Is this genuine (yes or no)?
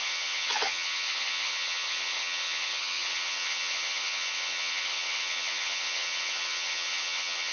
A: no